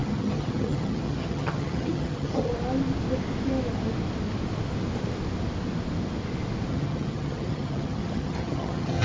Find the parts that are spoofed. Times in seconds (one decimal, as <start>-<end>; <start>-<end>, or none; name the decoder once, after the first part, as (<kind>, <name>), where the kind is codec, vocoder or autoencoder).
0.0-2.5 (vocoder, HiFi-GAN); 6.7-9.0